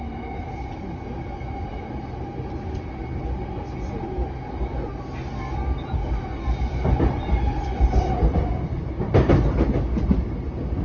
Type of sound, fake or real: real